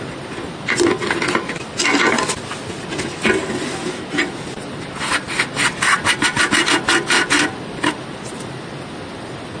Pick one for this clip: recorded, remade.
recorded